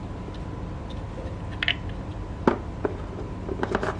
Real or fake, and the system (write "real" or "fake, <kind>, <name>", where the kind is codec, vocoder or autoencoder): real